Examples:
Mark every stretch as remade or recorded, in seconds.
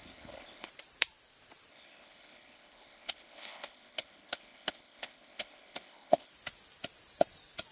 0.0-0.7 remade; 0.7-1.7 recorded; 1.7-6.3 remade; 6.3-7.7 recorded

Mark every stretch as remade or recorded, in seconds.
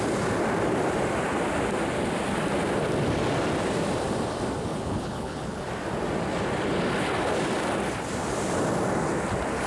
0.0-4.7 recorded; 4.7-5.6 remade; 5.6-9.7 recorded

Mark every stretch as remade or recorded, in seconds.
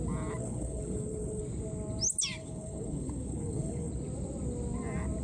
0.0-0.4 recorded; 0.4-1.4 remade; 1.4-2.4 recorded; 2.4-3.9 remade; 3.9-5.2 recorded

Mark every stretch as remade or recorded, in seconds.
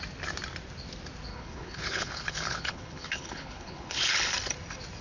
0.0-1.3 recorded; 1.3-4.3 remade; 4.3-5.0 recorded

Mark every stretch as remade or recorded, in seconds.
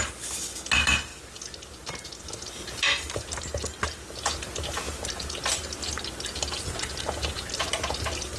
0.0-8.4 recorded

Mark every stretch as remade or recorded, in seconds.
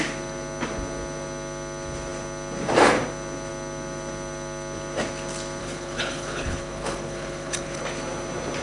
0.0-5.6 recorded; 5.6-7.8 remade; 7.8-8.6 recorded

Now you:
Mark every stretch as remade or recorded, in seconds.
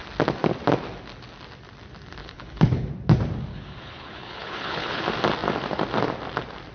0.0-2.2 recorded; 2.2-2.9 remade; 2.9-3.5 recorded; 3.5-5.0 remade; 5.0-6.7 recorded